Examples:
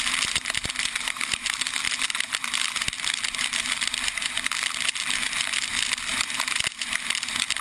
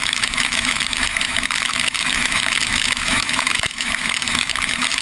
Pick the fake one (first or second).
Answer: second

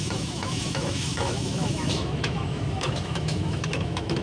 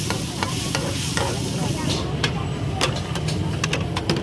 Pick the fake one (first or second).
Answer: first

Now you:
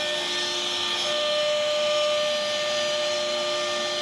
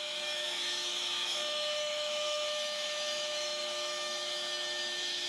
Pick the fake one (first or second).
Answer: second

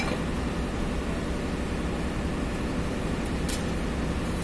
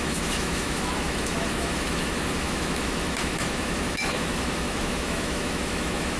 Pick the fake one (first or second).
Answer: second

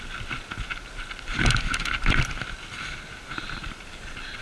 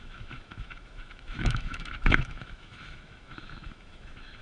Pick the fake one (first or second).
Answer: second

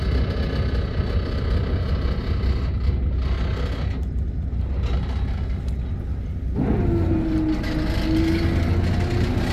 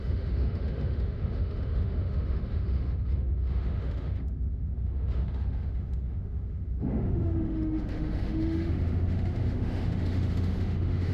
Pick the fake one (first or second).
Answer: second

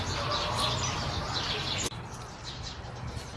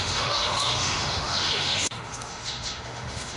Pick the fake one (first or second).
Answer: second